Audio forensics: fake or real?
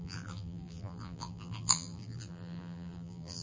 fake